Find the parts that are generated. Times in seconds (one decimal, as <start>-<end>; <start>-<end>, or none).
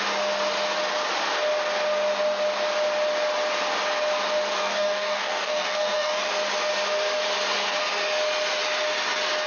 4.6-6.3